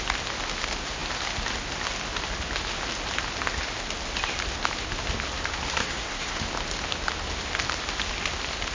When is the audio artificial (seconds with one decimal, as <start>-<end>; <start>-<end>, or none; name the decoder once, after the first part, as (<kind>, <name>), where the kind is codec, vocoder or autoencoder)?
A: 5.8-6.4 (codec, SNAC)